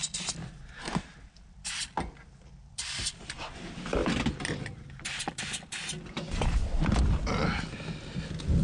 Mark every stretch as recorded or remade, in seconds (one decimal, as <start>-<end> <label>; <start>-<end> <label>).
0.0-4.0 remade; 4.0-4.5 recorded; 4.5-8.6 remade